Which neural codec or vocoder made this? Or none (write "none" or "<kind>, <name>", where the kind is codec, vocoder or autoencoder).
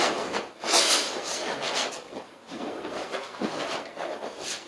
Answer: codec, SNAC